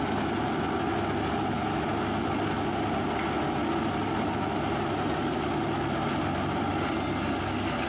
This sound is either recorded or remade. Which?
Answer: recorded